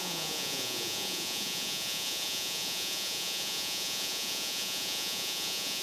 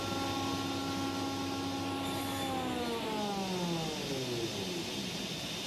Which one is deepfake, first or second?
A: first